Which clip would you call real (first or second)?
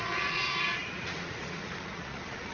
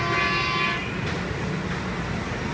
second